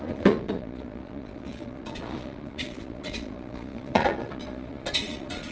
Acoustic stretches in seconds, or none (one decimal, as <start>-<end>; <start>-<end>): none